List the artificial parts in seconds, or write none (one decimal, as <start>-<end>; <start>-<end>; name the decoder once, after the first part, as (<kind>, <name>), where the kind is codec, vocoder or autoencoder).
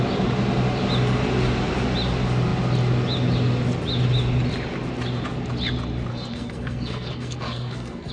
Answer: 6.1-8.1 (codec, SNAC)